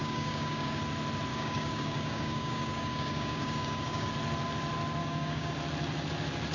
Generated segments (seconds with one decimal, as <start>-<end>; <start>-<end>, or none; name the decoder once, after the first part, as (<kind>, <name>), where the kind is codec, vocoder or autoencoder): 0.0-0.8 (codec, DAC); 1.3-4.1; 5.0-5.5